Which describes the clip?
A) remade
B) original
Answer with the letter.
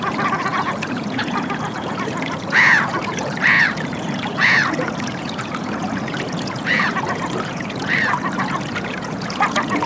A